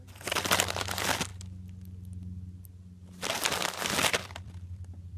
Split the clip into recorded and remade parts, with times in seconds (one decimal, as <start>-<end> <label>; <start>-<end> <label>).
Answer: 0.0-1.3 remade; 1.3-3.9 recorded; 3.9-5.2 remade